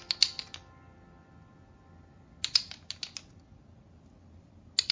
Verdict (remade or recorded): recorded